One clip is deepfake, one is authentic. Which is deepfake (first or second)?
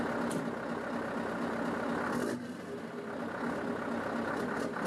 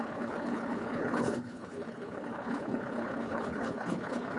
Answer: second